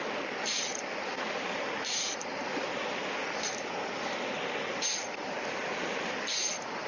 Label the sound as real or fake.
real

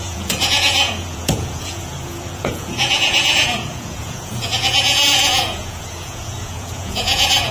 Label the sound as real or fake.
fake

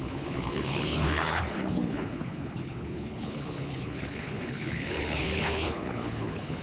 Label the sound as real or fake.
fake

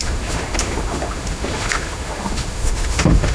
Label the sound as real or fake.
fake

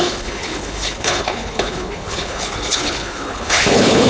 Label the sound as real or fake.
fake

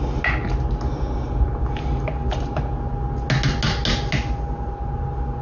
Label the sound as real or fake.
real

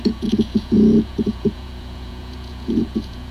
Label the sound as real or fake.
fake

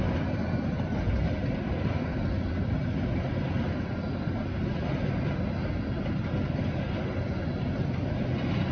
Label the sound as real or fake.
real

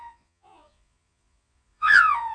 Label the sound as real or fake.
fake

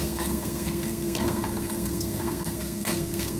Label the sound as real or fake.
fake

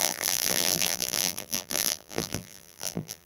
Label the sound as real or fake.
fake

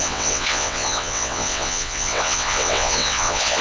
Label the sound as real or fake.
fake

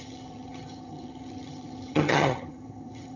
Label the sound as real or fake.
fake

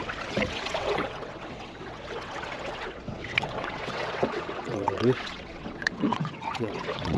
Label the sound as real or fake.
fake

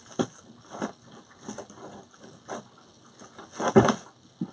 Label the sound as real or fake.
real